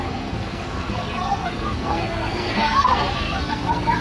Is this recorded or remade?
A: remade